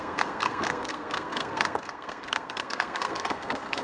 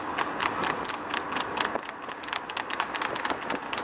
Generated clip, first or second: first